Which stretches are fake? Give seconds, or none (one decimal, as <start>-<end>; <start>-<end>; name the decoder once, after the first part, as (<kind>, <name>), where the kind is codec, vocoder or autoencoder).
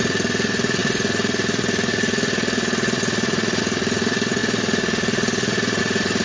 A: 0.0-6.2 (vocoder, Vocos)